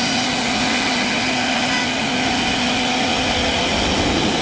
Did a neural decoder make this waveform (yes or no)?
no